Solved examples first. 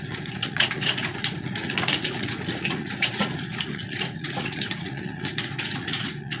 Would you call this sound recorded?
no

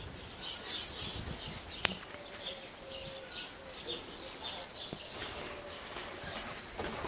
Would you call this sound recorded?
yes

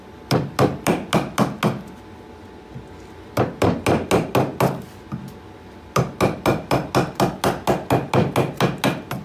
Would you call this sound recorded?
yes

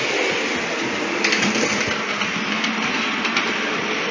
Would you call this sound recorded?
yes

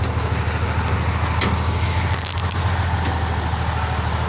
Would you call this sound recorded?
yes